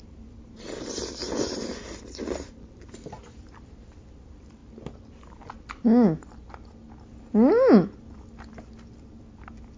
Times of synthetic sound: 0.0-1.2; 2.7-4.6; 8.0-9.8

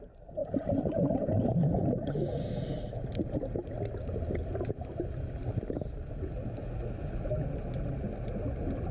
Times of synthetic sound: 0.4-1.3

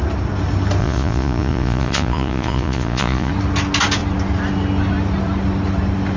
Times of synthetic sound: 0.8-3.3

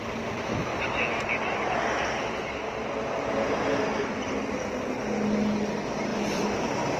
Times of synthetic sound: 6.1-6.6

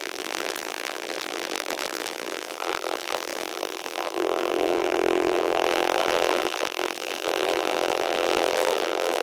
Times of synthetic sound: 0.0-9.2

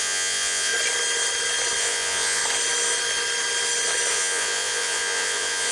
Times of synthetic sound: 0.0-0.7; 1.8-2.4; 4.1-5.7

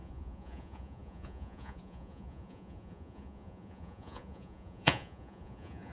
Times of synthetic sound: 0.0-5.9

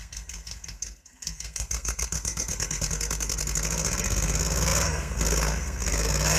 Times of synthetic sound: 0.0-6.4